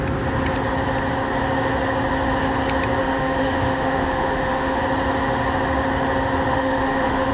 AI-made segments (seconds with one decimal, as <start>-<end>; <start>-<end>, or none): 3.0-4.8; 6.5-7.3